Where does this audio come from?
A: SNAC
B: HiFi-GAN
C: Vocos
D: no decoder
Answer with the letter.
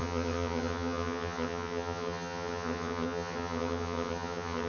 B